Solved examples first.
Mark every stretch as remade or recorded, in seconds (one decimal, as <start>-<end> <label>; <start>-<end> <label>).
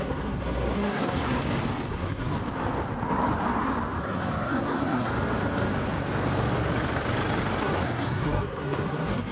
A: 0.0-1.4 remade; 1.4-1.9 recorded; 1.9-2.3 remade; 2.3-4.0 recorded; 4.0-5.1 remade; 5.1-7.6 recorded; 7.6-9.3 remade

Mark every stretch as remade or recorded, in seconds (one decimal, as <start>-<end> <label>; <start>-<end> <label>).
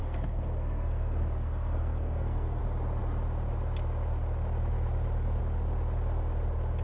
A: 0.0-2.6 remade; 2.6-6.8 recorded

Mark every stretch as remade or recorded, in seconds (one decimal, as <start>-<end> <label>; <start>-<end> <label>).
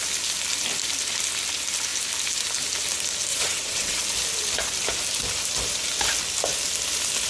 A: 0.0-3.3 recorded; 3.3-4.0 remade; 4.0-7.3 recorded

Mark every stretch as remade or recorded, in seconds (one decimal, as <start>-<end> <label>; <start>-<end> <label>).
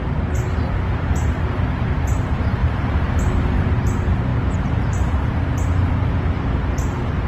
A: 0.0-2.6 recorded; 2.6-3.7 remade; 3.7-4.3 recorded; 4.3-5.3 remade; 5.3-7.3 recorded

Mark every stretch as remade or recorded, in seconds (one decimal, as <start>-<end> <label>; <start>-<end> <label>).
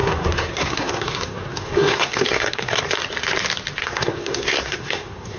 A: 0.0-2.8 remade; 2.8-3.8 recorded; 3.8-5.4 remade